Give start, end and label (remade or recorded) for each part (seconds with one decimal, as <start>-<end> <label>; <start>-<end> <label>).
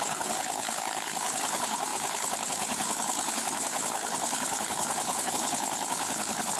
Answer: 0.0-6.6 remade